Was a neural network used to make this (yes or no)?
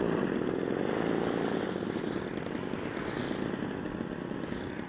no